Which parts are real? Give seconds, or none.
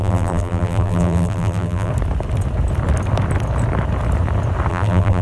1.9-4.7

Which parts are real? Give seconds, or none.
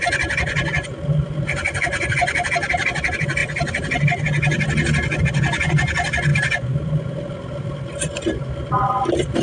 0.0-9.4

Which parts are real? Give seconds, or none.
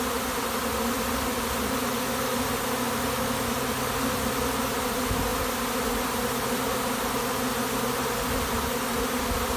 0.0-9.6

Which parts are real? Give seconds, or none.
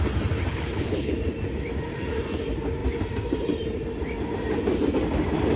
0.0-0.5; 1.1-5.6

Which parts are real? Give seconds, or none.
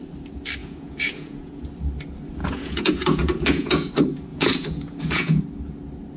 0.0-0.6; 1.5-2.4; 3.9-4.3; 5.4-6.2